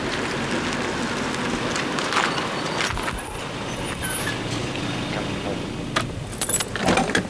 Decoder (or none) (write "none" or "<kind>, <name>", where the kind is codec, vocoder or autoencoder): none